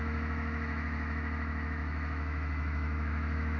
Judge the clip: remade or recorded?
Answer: remade